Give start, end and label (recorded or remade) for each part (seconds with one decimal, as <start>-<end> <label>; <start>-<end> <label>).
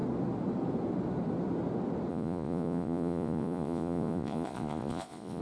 0.0-2.1 recorded; 2.1-5.4 remade